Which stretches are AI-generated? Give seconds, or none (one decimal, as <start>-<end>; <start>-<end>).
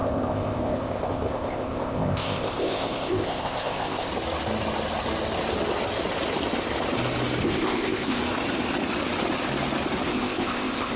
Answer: 0.0-4.1; 7.4-8.2; 10.1-11.0